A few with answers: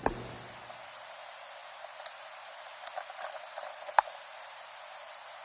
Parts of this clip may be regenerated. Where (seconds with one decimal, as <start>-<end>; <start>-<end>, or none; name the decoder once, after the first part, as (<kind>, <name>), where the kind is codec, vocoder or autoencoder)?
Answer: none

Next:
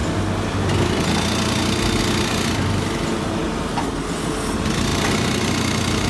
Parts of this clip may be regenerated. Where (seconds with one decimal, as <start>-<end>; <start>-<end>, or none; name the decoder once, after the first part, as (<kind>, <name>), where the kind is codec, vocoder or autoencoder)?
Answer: none

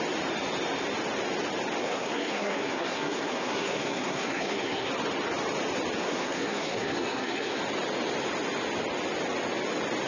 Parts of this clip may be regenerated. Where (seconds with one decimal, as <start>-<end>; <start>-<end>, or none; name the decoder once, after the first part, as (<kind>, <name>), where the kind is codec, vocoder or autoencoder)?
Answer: 1.8-4.9 (codec, SNAC); 6.0-7.6

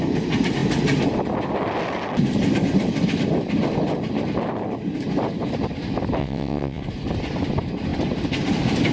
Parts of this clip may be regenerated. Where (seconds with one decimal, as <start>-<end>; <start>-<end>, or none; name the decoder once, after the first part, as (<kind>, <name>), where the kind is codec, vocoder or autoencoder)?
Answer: 6.2-6.8 (vocoder, WaveNeXt)

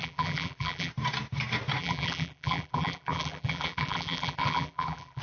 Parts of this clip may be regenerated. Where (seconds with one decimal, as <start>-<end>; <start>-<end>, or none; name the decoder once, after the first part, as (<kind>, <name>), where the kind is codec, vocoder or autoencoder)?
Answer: 0.0-0.9 (vocoder, BigVGAN v2); 1.8-5.2